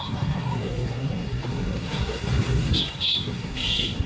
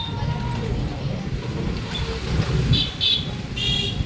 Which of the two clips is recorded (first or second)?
second